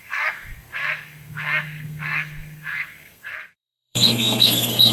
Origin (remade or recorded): remade